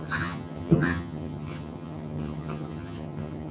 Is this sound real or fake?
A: fake